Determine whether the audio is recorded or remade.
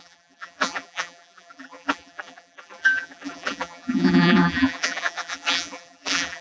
remade